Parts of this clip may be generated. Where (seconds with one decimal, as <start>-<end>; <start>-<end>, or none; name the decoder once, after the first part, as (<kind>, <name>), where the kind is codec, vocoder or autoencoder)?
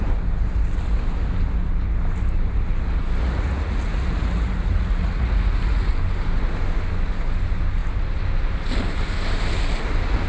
3.2-5.9 (vocoder, Vocos)